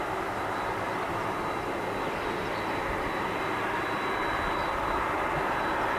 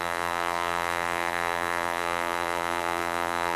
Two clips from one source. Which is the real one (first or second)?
first